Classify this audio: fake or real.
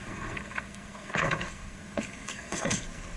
fake